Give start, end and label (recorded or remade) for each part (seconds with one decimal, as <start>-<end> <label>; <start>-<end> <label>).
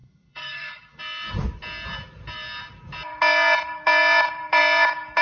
0.0-1.0 remade; 1.0-5.2 recorded